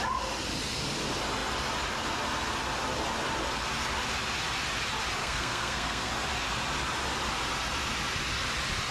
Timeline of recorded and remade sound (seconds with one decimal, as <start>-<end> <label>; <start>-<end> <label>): 0.0-5.2 recorded; 5.2-6.1 remade; 6.1-8.9 recorded